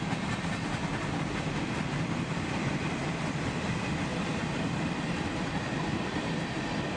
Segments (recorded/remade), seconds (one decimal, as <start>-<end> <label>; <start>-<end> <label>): 0.0-7.0 remade